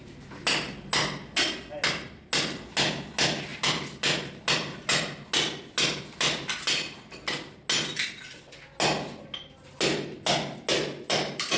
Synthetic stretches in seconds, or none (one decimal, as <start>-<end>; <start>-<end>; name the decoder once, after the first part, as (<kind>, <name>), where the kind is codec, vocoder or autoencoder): none